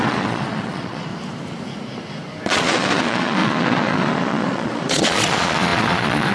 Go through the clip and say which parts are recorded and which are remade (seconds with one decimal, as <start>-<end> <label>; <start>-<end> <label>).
0.0-1.1 remade; 1.1-2.4 recorded; 2.4-6.3 remade